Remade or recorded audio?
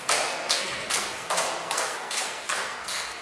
remade